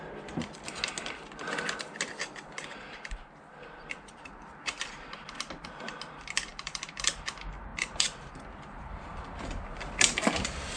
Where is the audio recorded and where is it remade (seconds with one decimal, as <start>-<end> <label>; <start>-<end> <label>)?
0.0-6.5 recorded; 6.5-7.1 remade; 7.1-7.7 recorded; 7.7-8.3 remade; 8.3-10.8 recorded